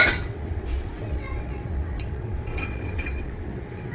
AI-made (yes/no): yes